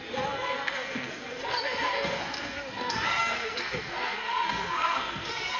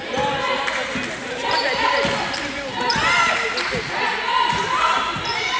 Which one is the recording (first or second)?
second